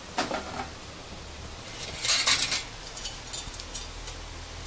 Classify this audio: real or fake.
real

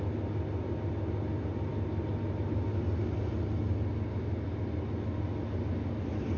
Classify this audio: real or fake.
real